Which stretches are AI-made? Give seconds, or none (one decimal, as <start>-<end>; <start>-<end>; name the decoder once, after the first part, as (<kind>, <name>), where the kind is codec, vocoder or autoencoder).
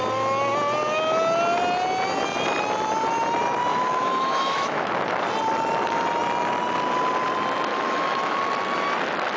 3.7-4.9 (autoencoder, DAC-VAE); 7.7-8.4